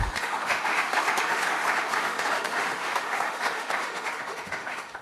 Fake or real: fake